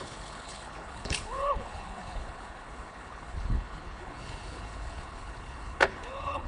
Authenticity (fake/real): fake